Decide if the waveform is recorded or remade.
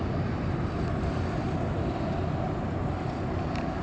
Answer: recorded